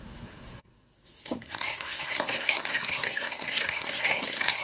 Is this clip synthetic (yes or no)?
yes